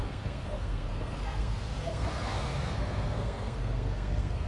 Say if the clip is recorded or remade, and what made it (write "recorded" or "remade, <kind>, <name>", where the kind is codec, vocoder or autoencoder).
remade, codec, SNAC